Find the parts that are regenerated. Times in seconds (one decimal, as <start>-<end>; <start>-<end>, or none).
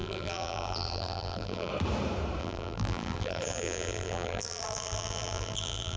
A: 0.0-1.7; 2.4-6.0